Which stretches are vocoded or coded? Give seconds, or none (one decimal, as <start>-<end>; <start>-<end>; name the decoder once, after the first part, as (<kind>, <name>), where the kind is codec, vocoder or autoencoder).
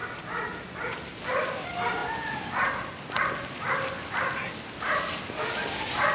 none